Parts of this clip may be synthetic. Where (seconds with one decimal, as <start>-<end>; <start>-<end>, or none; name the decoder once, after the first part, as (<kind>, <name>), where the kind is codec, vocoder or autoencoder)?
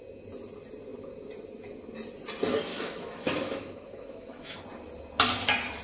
2.7-4.6 (autoencoder, DAC-VAE)